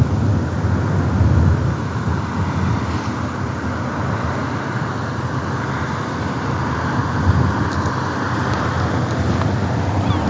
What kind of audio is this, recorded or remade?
recorded